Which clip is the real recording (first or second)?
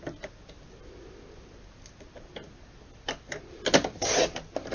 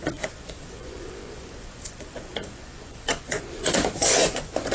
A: first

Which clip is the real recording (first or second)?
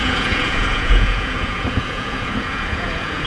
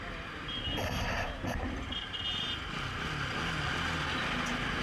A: second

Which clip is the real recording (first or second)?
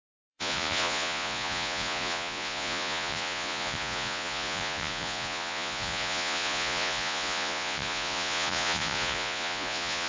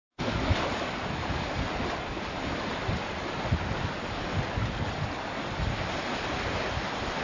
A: second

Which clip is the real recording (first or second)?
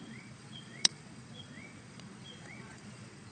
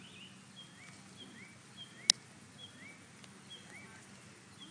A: second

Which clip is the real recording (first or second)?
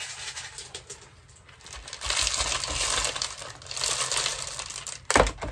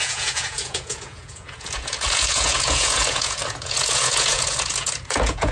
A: first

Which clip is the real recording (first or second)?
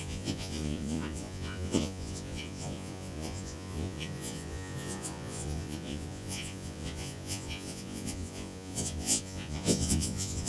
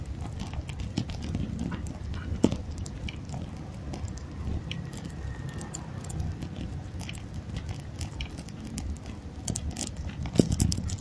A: second